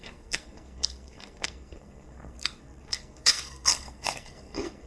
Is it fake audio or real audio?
fake